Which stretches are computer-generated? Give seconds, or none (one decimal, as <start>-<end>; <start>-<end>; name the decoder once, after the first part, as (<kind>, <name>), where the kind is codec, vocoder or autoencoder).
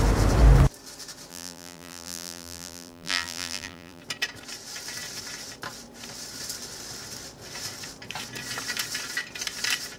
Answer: 1.3-4.0 (vocoder, BigVGAN v2)